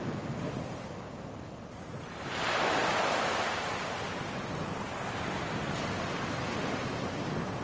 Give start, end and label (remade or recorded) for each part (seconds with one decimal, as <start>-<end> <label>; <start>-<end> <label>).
0.0-7.6 recorded